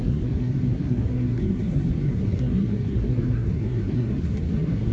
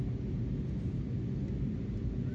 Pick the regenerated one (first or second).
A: first